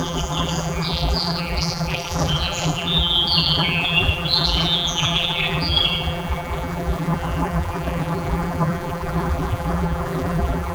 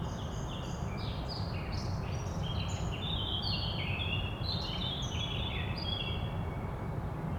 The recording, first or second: second